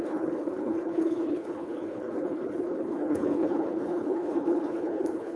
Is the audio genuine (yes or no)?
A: no